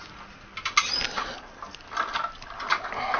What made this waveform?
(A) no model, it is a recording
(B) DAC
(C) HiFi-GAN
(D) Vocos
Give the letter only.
A